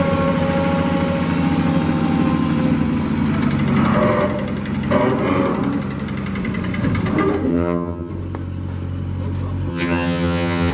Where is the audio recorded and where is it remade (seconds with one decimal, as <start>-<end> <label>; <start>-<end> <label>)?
0.0-7.5 recorded; 7.5-8.1 remade; 8.1-9.7 recorded; 9.7-10.7 remade